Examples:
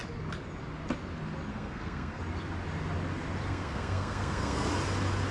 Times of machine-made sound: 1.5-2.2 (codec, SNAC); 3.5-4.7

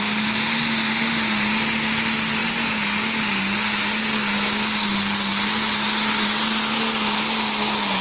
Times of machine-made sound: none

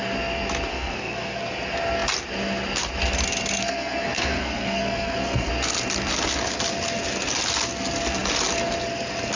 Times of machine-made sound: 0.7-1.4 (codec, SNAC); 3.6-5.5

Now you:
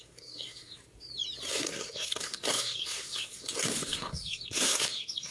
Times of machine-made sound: 0.0-0.8 (codec, SNAC); 1.5-5.3